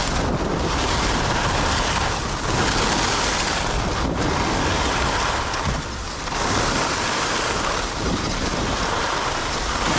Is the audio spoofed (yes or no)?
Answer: no